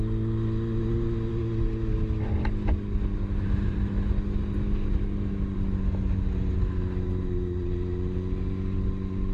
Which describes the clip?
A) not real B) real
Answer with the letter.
B